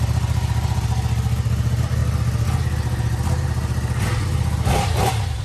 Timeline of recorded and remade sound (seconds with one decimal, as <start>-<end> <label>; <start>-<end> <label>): 0.0-5.4 recorded